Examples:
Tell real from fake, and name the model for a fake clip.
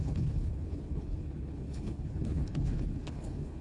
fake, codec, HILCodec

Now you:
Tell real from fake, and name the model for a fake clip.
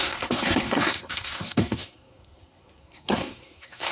fake, codec, SNAC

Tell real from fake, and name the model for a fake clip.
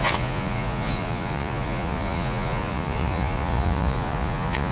fake, vocoder, Vocos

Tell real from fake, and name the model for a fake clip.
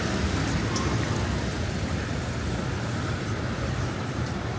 real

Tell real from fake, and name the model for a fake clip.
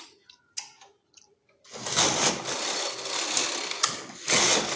real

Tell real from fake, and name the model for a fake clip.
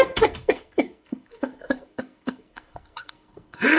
fake, codec, SNAC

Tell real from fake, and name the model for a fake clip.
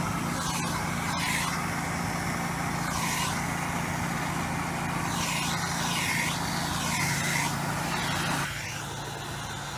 real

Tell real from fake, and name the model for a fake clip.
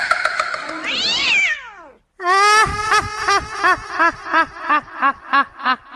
real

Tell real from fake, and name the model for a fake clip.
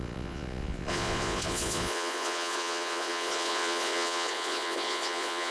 fake, vocoder, Vocos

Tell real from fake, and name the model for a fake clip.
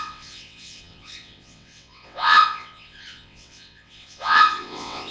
fake, vocoder, WaveNeXt